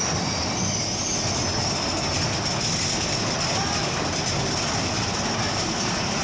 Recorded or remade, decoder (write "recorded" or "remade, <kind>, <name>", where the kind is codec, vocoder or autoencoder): recorded